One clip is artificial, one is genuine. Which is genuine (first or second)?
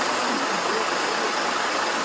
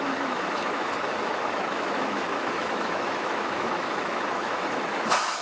first